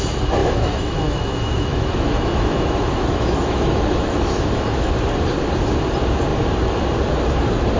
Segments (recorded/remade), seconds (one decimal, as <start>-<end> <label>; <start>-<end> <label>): 0.0-0.4 recorded; 0.4-4.9 remade; 4.9-7.8 recorded